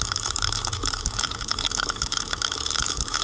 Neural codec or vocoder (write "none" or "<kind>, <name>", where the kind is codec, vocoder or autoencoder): autoencoder, DAC-VAE